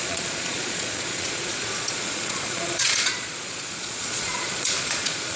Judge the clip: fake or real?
fake